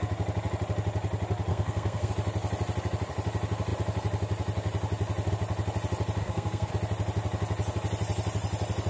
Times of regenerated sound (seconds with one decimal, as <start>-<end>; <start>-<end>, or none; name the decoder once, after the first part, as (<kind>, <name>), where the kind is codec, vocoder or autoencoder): 1.5-2.1 (codec, SNAC); 6.2-6.7